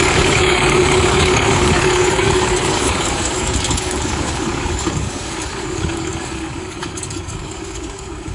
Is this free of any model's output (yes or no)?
no